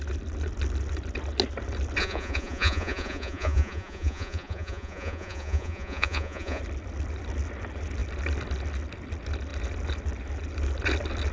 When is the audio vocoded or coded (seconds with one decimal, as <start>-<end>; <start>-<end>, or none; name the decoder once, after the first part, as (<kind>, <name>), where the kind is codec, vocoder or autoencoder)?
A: 2.0-6.6 (vocoder, Vocos)